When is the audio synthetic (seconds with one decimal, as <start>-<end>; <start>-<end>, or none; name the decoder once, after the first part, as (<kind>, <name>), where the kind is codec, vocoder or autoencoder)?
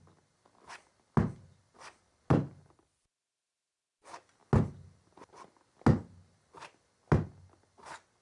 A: none